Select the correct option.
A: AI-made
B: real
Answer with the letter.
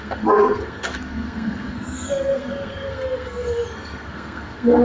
A